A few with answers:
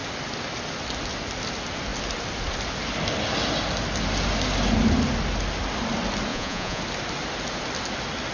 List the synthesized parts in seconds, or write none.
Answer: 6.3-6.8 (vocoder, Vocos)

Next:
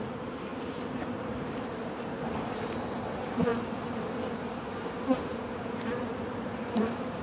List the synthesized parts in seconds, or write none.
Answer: 0.0-3.5 (vocoder, BigVGAN v2); 5.2-7.2

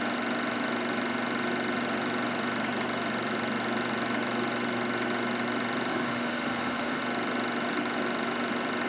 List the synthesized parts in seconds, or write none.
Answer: 5.9-7.0 (autoencoder, DAC-VAE)

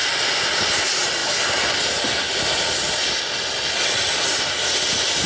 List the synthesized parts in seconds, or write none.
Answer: none

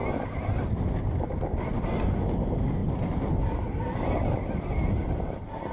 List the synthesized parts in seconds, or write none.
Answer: none

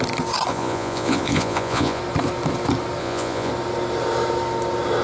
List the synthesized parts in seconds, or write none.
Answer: 0.5-2.0 (vocoder, Vocos); 3.0-3.5

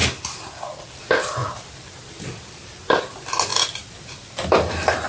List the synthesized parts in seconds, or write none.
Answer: none

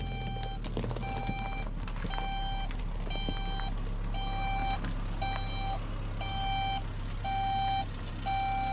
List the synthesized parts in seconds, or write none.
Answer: none